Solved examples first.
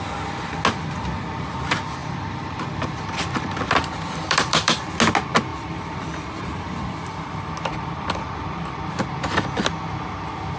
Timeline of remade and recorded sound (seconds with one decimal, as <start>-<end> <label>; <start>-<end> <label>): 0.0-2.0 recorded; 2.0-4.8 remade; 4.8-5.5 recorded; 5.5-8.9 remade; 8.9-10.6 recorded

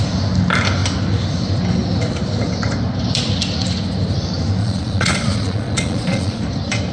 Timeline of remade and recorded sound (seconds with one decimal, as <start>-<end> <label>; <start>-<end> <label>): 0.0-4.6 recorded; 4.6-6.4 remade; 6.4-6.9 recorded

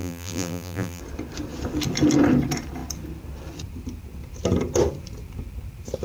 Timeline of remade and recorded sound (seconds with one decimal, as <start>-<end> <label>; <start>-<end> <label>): 0.0-1.0 remade; 1.0-6.0 recorded

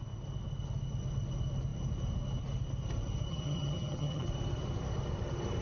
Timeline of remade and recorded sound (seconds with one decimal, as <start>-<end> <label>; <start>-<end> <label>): 0.0-3.3 recorded; 3.3-4.3 remade; 4.3-5.6 recorded